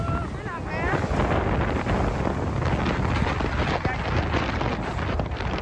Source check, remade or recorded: recorded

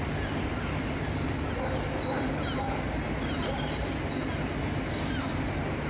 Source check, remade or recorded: recorded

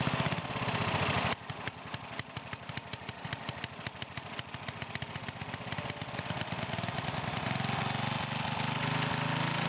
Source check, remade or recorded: recorded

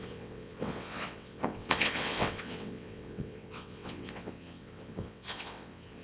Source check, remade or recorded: remade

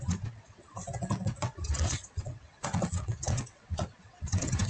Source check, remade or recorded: remade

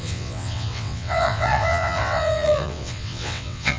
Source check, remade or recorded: remade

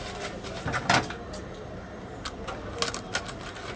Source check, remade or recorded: recorded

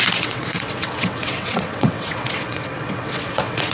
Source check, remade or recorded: remade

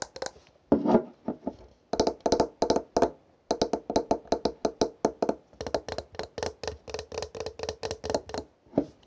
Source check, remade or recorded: recorded